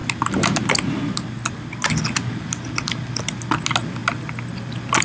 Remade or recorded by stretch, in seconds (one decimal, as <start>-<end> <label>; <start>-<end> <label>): 0.0-5.0 recorded